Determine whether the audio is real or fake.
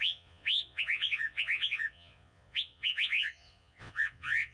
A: fake